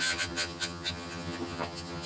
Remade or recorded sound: remade